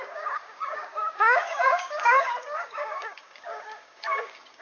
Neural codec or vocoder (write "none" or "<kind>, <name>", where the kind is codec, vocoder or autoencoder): codec, DAC